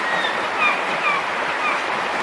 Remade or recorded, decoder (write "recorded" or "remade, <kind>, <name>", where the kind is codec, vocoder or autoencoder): recorded